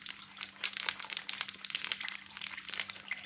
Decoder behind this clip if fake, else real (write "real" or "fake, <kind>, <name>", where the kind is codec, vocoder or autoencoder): real